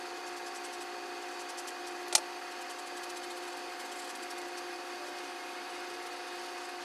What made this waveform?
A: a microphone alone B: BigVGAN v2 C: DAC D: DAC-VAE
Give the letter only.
A